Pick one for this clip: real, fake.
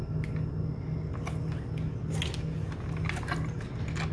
real